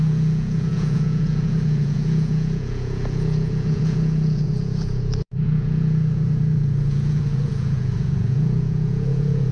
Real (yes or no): no